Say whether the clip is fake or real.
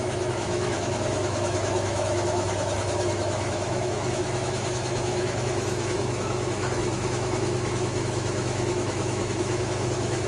fake